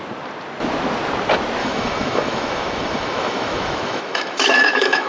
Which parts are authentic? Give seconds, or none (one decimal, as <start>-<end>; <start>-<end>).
0.0-1.6